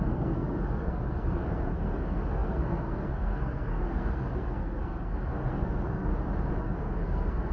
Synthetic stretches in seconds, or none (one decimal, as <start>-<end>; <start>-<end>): 0.0-6.1; 6.6-7.5